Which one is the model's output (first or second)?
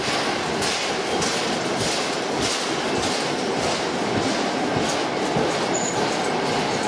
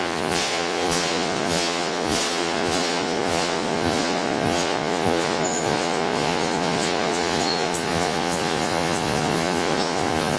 second